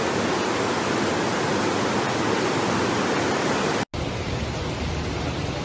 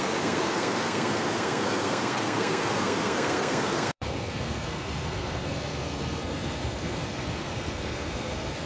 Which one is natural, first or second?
first